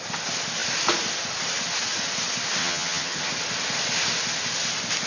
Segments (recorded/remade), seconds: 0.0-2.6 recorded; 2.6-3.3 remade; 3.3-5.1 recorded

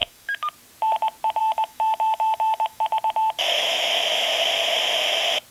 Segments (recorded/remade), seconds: 0.0-0.5 remade; 0.5-1.4 recorded; 1.4-2.8 remade; 2.8-3.4 recorded; 3.4-4.3 remade; 4.3-5.5 recorded

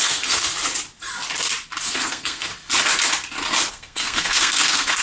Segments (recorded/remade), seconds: 0.0-0.5 remade; 0.5-1.9 recorded; 1.9-2.5 remade; 2.5-3.7 recorded; 3.7-5.0 remade

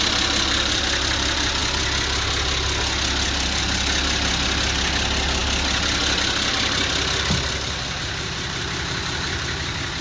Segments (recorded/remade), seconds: 0.0-10.0 recorded

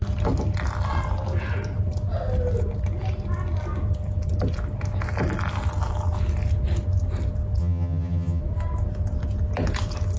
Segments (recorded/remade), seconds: 0.0-7.6 recorded; 7.6-8.4 remade; 8.4-10.2 recorded